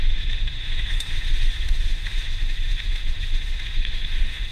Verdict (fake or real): fake